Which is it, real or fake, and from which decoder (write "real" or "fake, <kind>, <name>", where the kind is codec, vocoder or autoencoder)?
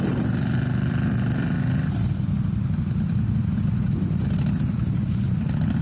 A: real